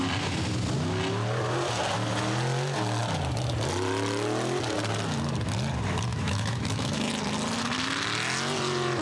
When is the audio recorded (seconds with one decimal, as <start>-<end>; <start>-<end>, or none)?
0.0-6.1; 7.1-9.0

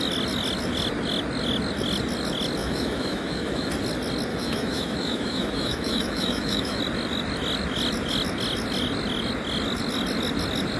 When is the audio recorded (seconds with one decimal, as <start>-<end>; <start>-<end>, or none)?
0.0-2.6; 3.7-4.3; 6.8-10.8